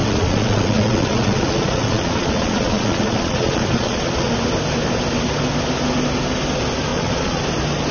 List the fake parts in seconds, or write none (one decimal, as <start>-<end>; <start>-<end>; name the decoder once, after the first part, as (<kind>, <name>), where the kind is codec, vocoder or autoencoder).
0.0-4.3 (vocoder, Vocos); 6.9-7.4